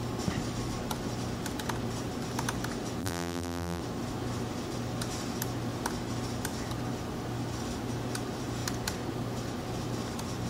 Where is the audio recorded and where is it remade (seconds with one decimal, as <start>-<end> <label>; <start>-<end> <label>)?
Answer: 0.0-3.0 recorded; 3.0-3.8 remade; 3.8-10.5 recorded